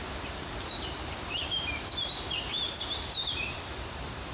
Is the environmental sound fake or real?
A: fake